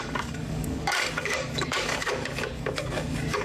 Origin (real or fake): fake